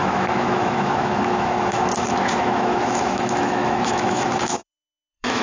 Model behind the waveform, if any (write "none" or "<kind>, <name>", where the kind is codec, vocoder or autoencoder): autoencoder, DAC-VAE